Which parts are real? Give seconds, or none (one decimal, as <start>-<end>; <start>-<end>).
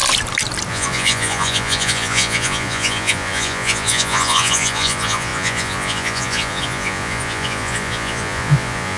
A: 0.0-0.7